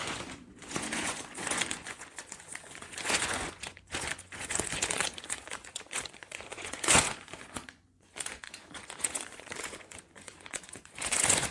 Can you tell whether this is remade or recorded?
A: remade